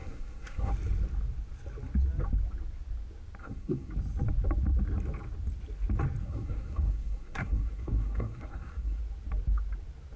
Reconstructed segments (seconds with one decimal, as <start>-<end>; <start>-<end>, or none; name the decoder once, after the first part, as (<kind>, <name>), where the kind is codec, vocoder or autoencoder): 0.0-0.7 (codec, SNAC); 3.4-3.9; 6.2-9.0